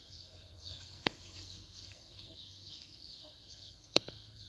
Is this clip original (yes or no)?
no